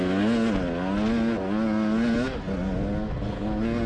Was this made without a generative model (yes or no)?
yes